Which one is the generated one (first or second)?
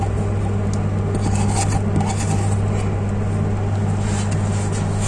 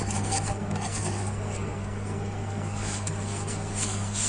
second